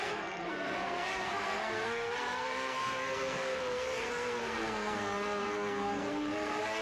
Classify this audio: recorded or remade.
remade